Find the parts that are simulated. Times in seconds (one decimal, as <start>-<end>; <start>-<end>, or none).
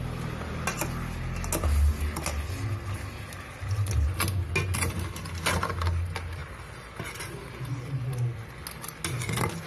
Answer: none